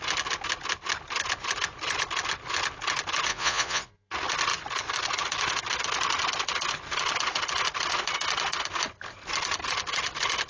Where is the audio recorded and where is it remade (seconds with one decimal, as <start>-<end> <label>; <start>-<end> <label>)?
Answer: 0.0-3.3 recorded; 3.3-3.9 remade; 3.9-10.5 recorded